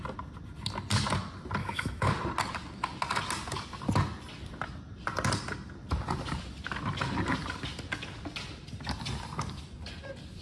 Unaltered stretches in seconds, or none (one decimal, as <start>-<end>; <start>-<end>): 0.0-1.6; 2.1-10.4